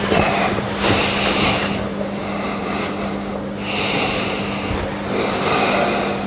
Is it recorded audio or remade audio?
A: recorded